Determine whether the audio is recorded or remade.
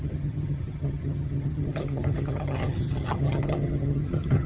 remade